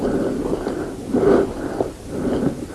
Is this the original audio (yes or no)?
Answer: yes